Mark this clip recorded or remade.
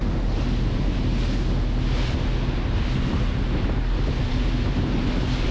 recorded